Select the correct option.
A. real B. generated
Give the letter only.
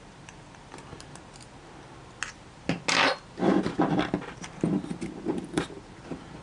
A